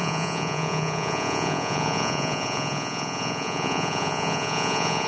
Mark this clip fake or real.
fake